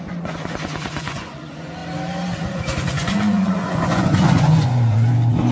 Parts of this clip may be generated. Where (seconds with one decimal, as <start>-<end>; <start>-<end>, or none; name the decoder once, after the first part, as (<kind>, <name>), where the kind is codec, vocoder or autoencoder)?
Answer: 0.0-1.8 (vocoder, Vocos); 2.5-5.5